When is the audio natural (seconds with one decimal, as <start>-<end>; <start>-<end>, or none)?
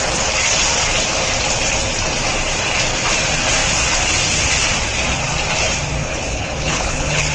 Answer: 0.0-6.0